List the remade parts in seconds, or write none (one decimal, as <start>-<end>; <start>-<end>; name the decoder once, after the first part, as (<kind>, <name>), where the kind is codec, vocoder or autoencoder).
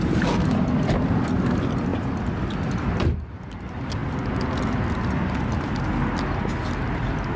none